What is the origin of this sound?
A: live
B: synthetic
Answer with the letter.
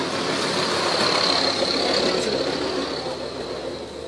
A